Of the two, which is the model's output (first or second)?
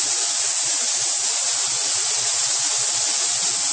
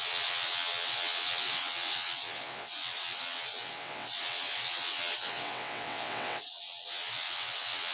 second